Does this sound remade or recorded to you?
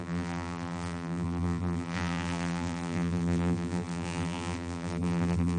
remade